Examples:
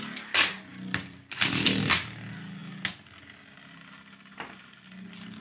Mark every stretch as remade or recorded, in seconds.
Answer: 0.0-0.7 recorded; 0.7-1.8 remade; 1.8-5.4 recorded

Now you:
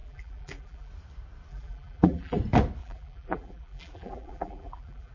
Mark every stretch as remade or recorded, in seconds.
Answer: 0.0-0.9 remade; 0.9-1.5 recorded; 1.5-2.4 remade; 2.4-2.8 recorded; 2.8-5.1 remade

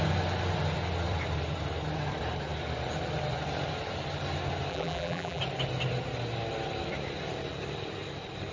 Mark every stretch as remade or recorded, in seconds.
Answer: 0.0-4.7 recorded; 4.7-5.4 remade; 5.4-8.5 recorded

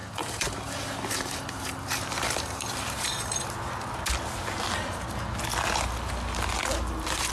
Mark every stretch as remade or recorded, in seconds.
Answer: 0.0-3.4 remade; 3.4-6.6 recorded; 6.6-7.3 remade

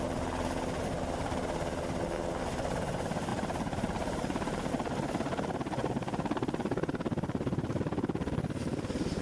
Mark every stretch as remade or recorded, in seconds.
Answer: 0.0-3.3 recorded; 3.3-4.7 remade; 4.7-5.8 recorded; 5.8-7.8 remade; 7.8-9.2 recorded

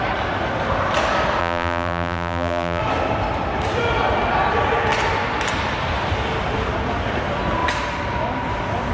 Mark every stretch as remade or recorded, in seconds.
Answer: 0.0-1.4 recorded; 1.4-2.8 remade; 2.8-8.9 recorded

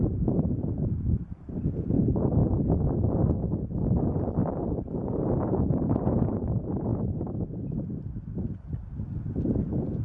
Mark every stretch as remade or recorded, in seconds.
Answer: 0.0-2.4 remade; 2.4-4.1 recorded; 4.1-10.0 remade